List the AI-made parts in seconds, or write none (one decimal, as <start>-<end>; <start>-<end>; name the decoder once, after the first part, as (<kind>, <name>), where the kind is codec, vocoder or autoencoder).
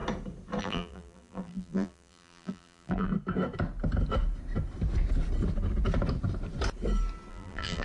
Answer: 0.6-3.1 (vocoder, BigVGAN v2); 7.3-7.8